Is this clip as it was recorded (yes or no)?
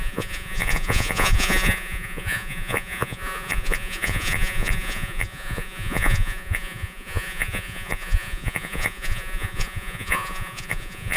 no